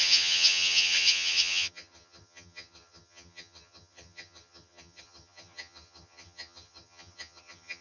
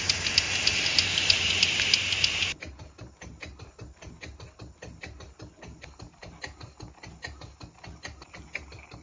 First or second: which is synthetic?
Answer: first